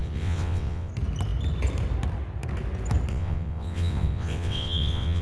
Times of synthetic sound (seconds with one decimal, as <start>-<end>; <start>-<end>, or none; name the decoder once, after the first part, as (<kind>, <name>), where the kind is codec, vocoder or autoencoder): 0.0-0.9 (vocoder, WaveNeXt); 3.1-5.2